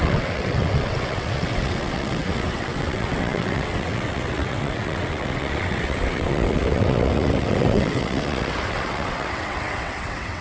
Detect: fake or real fake